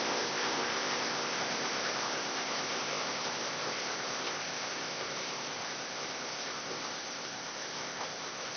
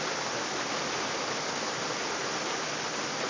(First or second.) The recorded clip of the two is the second